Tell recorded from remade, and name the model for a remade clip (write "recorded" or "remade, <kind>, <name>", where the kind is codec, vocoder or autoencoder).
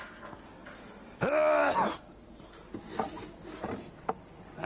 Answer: recorded